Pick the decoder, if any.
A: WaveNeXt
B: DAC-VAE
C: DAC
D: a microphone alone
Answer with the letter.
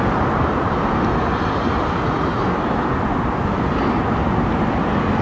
D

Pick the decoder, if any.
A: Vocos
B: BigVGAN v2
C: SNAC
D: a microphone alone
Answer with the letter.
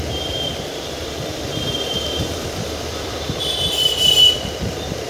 B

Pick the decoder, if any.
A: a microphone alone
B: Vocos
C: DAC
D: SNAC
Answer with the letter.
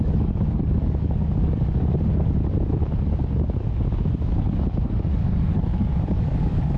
C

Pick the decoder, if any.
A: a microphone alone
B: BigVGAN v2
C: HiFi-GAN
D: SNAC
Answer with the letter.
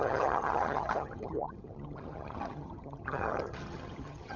C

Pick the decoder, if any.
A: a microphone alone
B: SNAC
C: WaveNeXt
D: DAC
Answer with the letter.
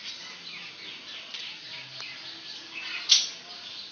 A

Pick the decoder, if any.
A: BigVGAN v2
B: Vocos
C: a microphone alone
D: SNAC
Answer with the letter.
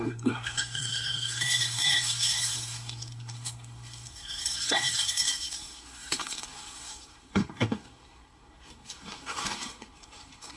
D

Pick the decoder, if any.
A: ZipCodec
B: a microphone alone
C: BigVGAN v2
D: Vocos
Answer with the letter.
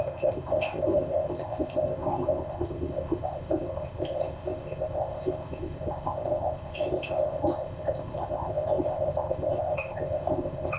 A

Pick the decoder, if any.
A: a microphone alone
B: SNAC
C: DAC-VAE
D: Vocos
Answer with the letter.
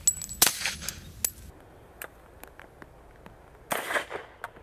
A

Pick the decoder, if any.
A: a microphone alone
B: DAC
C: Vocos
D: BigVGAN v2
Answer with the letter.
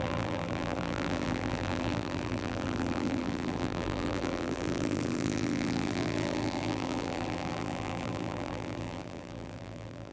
D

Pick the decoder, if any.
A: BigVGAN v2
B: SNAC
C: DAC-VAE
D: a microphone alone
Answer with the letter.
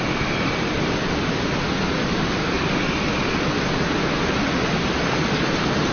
D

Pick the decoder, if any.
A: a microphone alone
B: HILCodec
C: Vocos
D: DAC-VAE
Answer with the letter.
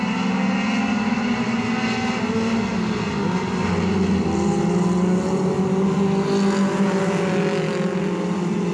A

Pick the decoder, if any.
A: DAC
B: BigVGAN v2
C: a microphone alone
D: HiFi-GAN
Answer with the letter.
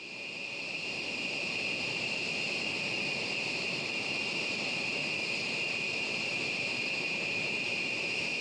B